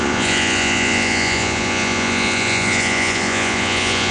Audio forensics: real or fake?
fake